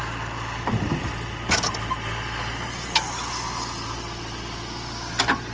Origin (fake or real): real